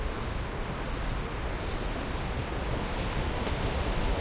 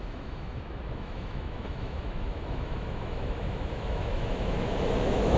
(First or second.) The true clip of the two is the first